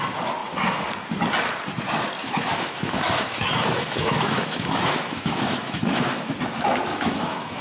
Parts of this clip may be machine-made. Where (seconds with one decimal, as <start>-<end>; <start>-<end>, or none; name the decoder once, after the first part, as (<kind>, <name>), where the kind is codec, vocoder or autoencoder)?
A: 2.2-6.3 (autoencoder, DAC-VAE); 6.9-7.6